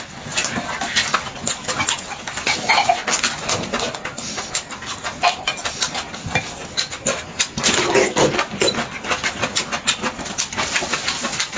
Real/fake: real